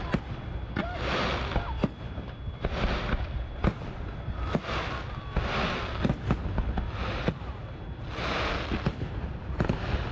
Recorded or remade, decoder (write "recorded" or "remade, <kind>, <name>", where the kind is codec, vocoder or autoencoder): recorded